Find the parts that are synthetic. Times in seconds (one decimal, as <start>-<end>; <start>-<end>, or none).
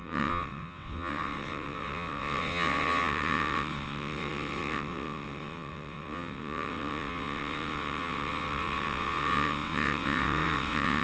0.0-11.0